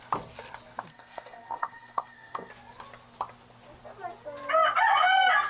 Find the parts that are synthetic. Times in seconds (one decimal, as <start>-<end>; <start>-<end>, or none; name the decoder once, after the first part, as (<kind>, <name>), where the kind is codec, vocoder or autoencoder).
0.9-2.5 (codec, SNAC)